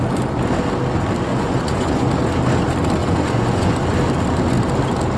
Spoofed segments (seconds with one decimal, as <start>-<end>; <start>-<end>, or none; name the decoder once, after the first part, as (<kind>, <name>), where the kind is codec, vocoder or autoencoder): 1.3-2.1 (vocoder, Vocos); 3.0-3.9